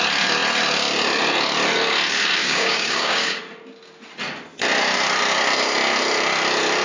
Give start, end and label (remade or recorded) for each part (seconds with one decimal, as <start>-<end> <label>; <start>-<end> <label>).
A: 0.0-2.4 recorded; 2.4-3.4 remade; 3.4-6.8 recorded